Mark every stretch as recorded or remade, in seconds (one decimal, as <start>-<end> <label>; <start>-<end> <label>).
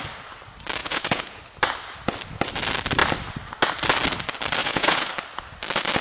0.0-0.8 recorded; 0.8-1.4 remade; 1.4-4.6 recorded; 4.6-5.1 remade; 5.1-6.0 recorded